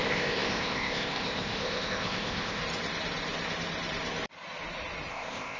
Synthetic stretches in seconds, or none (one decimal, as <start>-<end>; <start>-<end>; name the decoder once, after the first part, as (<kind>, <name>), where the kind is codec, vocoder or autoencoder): 0.0-2.6 (codec, ZipCodec); 5.1-5.6